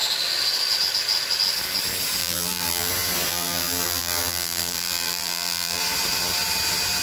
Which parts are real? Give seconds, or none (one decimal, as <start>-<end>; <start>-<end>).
0.0-2.2; 2.9-3.3; 5.8-7.0